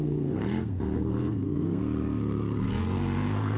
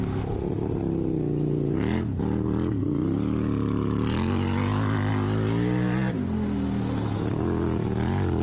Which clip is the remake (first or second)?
first